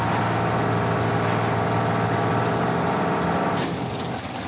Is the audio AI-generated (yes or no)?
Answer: no